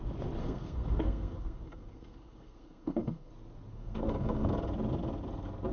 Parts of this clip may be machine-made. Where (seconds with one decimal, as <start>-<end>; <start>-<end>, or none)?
0.4-3.3; 3.7-4.5